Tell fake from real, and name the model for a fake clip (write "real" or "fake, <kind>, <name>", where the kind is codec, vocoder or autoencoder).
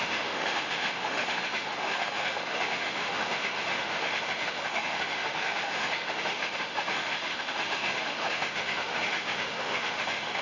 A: fake, autoencoder, DAC-VAE